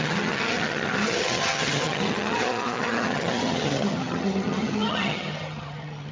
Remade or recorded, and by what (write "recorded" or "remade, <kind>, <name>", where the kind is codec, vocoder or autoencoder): remade, vocoder, HiFi-GAN